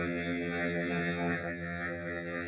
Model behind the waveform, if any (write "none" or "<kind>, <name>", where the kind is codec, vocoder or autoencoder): vocoder, HiFi-GAN